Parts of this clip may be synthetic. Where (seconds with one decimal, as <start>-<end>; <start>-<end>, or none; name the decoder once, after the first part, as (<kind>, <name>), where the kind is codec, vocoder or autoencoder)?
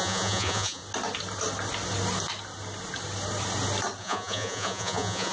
0.0-0.8 (vocoder, Vocos); 4.0-5.3